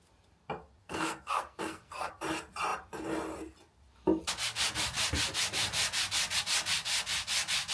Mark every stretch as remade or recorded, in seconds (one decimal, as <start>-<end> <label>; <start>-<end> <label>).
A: 0.0-0.8 recorded; 0.8-2.1 remade; 2.1-7.7 recorded